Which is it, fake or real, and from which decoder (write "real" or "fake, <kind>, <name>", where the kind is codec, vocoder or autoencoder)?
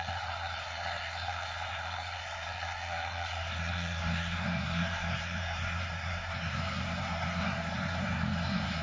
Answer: fake, codec, SNAC